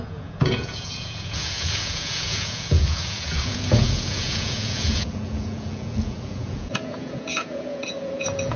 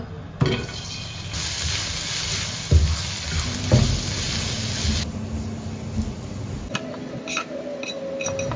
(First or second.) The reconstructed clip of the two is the first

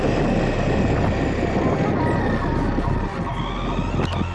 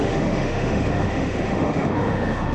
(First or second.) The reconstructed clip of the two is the second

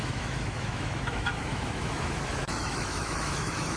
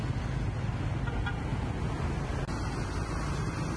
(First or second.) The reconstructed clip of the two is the first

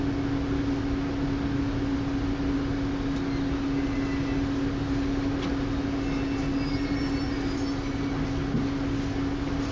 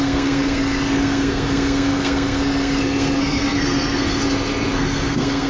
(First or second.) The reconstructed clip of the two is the second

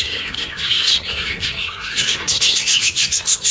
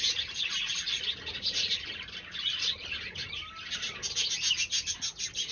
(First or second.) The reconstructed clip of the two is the first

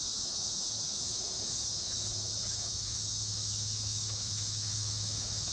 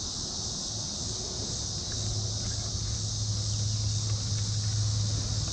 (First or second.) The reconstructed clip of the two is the first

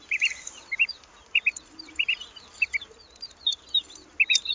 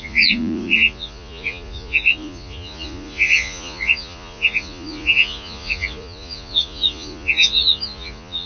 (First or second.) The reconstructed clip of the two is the second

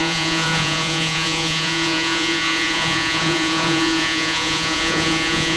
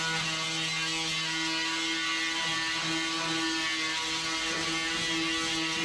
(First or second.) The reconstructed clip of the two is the first